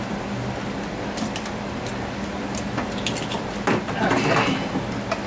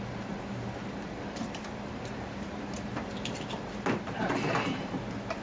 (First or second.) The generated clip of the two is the second